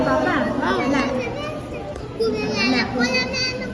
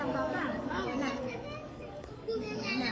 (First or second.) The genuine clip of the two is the first